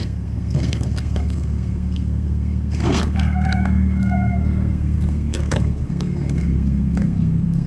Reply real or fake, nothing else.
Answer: fake